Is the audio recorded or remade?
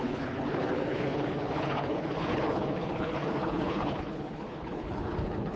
remade